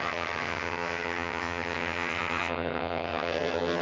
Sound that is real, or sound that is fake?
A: fake